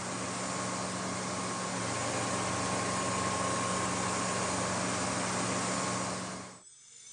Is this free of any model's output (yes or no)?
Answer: yes